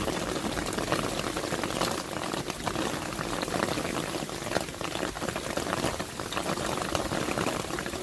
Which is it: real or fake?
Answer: real